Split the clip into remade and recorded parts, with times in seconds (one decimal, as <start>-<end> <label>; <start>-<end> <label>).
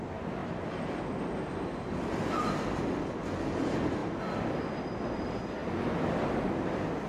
0.0-0.4 recorded; 0.4-1.0 remade; 1.0-7.1 recorded